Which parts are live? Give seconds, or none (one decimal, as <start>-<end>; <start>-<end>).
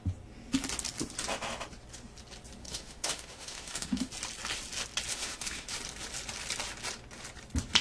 0.0-2.6; 4.1-5.1; 5.7-7.8